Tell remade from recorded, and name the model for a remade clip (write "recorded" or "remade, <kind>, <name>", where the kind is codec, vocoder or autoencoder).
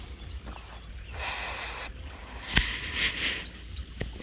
recorded